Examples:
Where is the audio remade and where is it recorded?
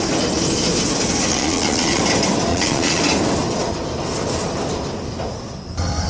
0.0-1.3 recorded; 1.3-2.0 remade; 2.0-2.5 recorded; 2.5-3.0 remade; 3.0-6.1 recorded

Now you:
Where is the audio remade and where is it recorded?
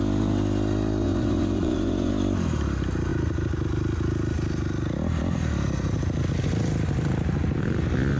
0.0-1.0 recorded; 1.0-2.1 remade; 2.1-8.2 recorded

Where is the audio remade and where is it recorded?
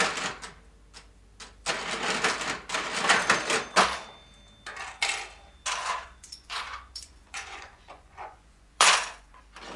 0.0-5.8 recorded; 5.8-9.4 remade; 9.4-9.8 recorded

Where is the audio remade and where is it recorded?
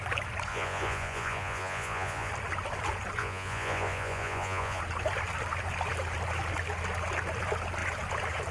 0.0-0.5 recorded; 0.5-2.3 remade; 2.3-3.2 recorded; 3.2-4.8 remade; 4.8-8.5 recorded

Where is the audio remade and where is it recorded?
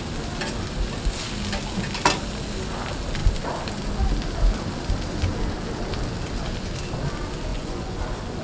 0.0-7.5 recorded; 7.5-8.0 remade; 8.0-8.4 recorded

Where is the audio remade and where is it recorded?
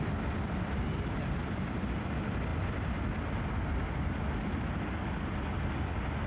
0.0-6.3 recorded